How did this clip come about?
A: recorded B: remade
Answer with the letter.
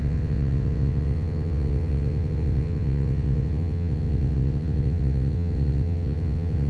B